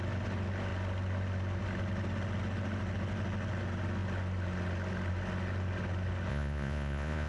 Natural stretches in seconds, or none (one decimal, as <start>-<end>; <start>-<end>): 0.0-6.3